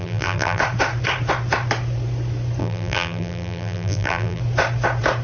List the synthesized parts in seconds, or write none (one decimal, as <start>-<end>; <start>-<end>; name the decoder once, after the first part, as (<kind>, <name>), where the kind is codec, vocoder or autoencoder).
0.0-0.6 (vocoder, BigVGAN v2); 2.6-4.4